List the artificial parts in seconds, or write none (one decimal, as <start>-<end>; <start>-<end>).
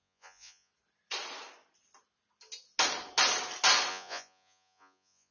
0.0-0.7; 3.9-5.3